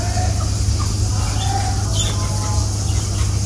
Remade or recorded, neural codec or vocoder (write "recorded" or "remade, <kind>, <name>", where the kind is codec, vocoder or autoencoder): recorded